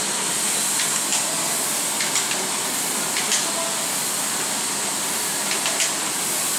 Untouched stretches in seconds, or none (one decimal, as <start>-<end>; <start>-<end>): 0.0-6.6

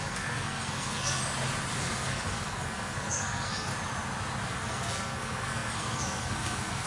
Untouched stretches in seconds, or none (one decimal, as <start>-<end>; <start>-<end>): 1.2-1.8; 3.7-4.5

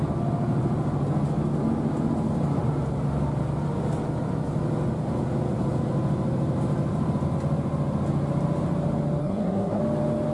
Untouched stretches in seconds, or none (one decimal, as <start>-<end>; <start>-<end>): 0.0-9.2; 9.8-10.3

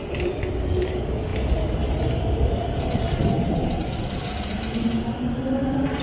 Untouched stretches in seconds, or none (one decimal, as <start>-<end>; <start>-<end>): 0.0-6.0

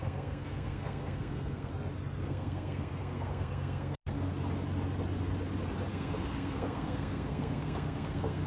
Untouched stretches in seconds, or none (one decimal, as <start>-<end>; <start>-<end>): 1.7-2.2; 4.3-5.9

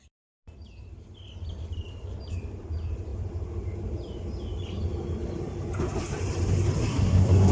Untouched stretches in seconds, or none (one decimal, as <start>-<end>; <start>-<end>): 0.0-6.9